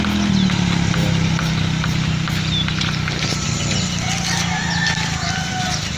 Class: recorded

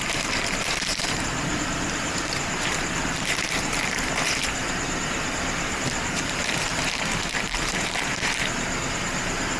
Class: remade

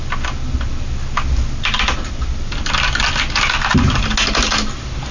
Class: recorded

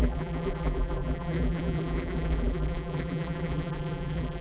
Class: remade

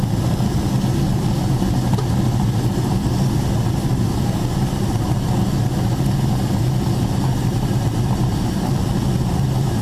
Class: recorded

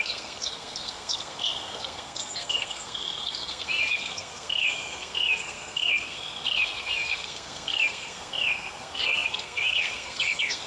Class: remade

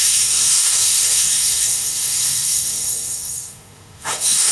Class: remade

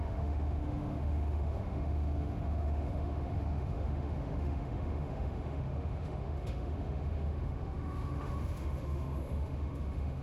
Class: remade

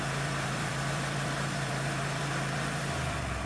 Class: remade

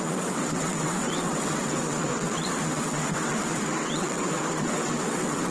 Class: remade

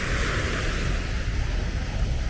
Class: recorded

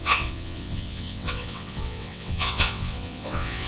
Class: remade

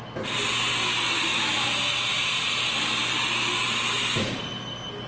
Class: recorded